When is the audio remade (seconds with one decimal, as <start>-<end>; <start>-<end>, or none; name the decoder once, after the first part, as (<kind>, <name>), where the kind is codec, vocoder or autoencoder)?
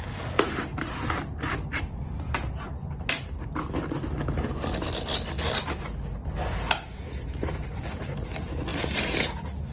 none